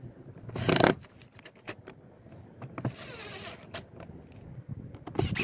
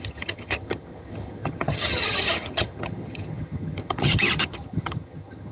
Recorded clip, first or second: first